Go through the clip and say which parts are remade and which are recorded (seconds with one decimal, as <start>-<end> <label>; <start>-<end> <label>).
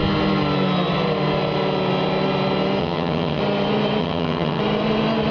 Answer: 0.0-2.8 recorded; 2.8-3.4 remade; 3.4-4.0 recorded; 4.0-4.6 remade; 4.6-5.3 recorded